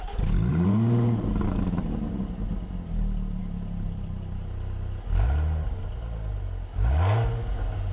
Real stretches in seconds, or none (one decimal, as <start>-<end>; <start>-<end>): 0.0-0.5; 1.3-7.9